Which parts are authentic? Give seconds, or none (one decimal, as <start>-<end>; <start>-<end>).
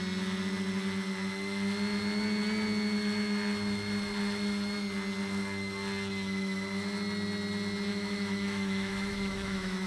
0.0-7.9